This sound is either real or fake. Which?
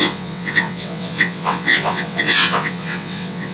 fake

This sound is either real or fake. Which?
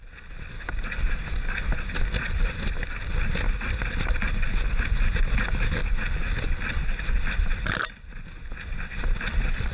real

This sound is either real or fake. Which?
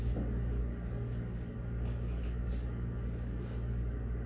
fake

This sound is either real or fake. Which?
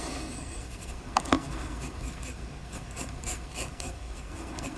fake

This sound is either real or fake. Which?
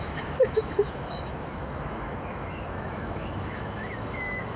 fake